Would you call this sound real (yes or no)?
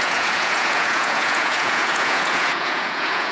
no